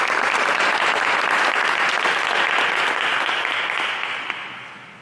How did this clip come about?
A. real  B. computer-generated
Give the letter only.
A